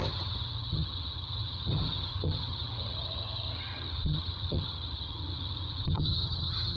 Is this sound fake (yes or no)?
yes